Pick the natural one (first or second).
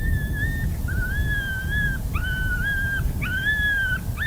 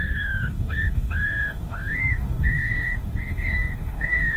first